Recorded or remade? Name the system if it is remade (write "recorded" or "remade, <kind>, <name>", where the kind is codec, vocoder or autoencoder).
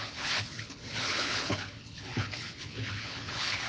remade, codec, HILCodec